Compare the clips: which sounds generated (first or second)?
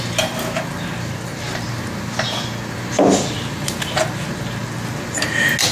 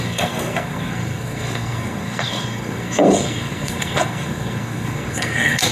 second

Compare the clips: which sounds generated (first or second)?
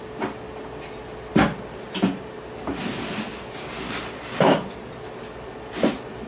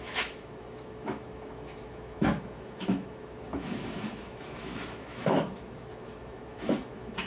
second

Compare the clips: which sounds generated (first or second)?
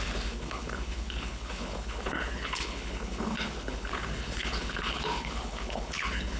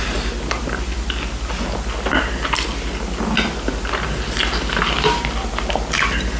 first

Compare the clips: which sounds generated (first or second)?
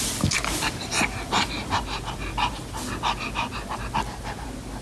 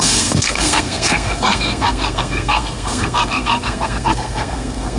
second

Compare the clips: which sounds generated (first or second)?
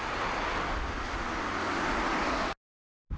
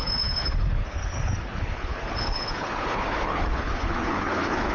second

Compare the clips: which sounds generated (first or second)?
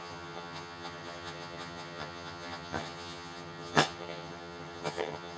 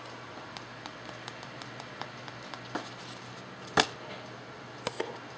first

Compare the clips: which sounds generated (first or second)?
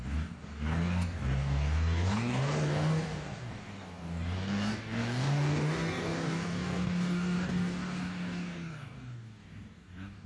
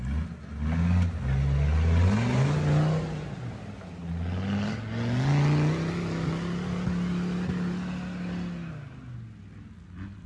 first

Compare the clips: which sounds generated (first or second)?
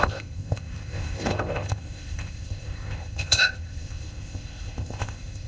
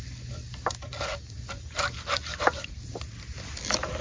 first